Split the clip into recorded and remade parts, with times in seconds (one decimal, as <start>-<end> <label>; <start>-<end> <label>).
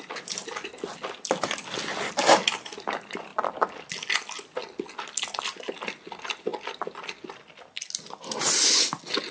0.0-9.3 recorded